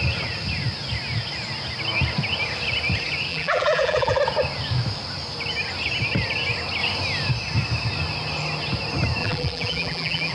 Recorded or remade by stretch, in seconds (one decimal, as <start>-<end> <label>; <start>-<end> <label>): 0.0-3.3 recorded; 3.3-4.2 remade; 4.2-9.2 recorded; 9.2-10.3 remade